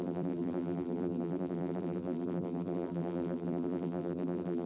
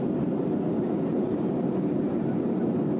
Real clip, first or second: second